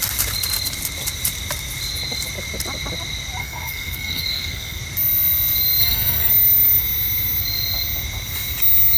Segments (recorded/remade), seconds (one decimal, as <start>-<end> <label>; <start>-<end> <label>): 0.0-3.4 recorded; 3.4-4.8 remade; 4.8-5.8 recorded; 5.8-6.3 remade; 6.3-9.0 recorded